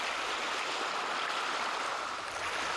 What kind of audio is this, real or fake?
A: real